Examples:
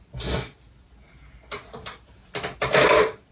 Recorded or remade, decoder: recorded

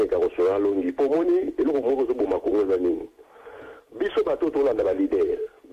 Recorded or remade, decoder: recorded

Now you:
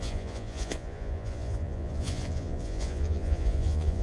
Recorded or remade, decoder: remade, vocoder, Vocos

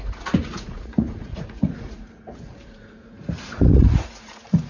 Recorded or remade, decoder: remade, vocoder, Vocos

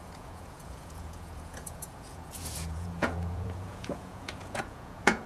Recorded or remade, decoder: remade, vocoder, Vocos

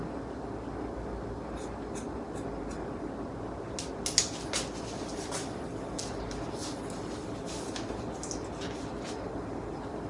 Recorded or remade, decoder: recorded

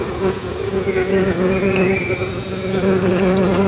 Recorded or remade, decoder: remade, vocoder, Vocos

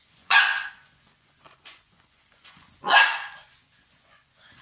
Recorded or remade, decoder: remade, vocoder, Vocos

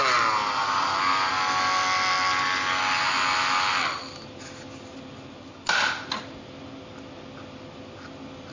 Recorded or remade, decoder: recorded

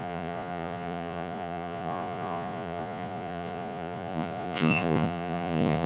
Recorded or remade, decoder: remade, vocoder, Vocos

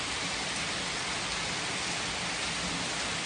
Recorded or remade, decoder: recorded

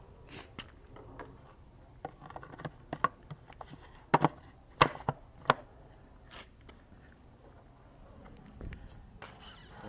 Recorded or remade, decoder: recorded